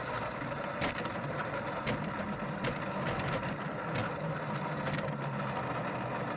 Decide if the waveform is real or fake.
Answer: real